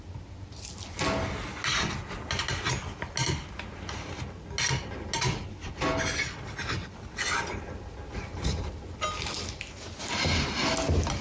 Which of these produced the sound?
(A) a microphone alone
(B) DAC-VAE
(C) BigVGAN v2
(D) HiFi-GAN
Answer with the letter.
A